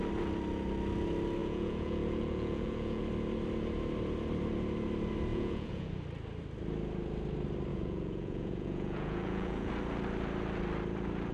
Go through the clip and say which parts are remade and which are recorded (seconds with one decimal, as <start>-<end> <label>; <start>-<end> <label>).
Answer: 0.0-1.4 recorded; 1.4-3.0 remade; 3.0-5.3 recorded; 5.3-5.9 remade; 5.9-7.7 recorded; 7.7-9.7 remade; 9.7-11.3 recorded